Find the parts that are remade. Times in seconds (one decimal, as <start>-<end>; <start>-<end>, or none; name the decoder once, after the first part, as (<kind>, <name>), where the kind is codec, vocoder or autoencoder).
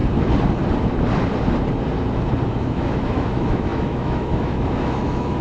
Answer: 2.5-5.4 (autoencoder, DAC-VAE)